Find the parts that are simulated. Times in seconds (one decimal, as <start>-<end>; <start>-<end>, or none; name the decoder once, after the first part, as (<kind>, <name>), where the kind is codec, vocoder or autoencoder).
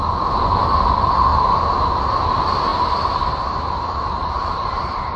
none